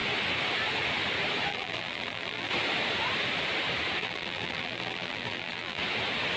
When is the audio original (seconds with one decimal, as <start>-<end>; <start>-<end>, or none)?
0.0-1.5; 2.5-4.0; 5.8-6.4